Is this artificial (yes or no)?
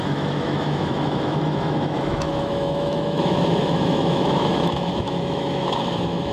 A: yes